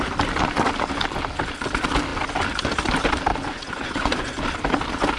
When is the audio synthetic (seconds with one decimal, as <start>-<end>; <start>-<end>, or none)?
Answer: 3.3-4.4